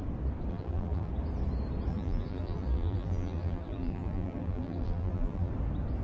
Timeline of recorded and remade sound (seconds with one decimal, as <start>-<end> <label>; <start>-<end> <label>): 0.0-0.5 recorded; 0.5-1.1 remade; 1.1-1.9 recorded; 1.9-5.5 remade; 5.5-6.0 recorded